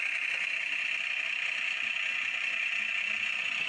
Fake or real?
real